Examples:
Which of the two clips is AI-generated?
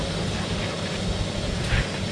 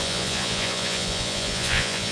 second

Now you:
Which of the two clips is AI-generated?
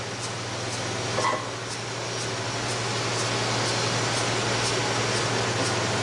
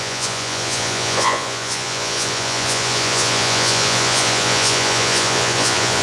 second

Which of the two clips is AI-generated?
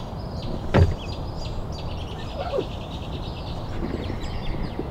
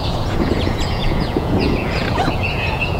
second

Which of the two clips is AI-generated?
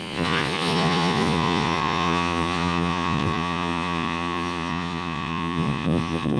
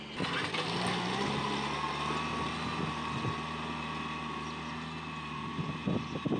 first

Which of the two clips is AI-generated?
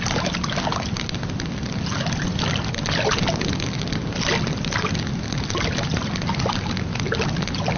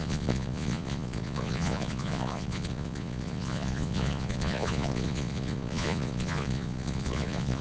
second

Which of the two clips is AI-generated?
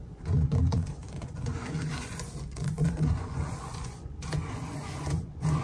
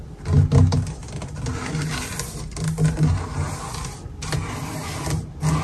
first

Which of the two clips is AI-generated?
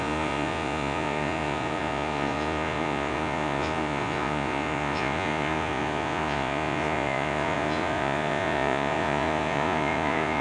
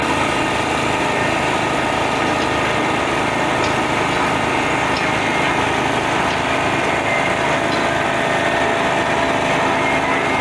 first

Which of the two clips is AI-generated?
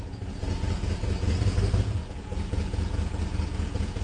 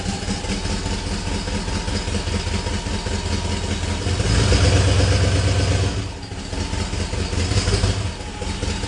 first